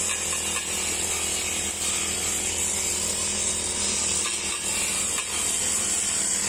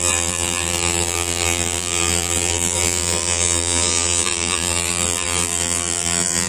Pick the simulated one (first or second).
second